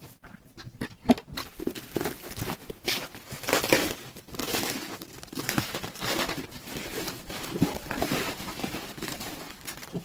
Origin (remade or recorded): remade